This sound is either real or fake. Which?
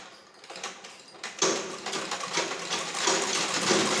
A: real